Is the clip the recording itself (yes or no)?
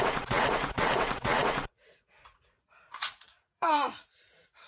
no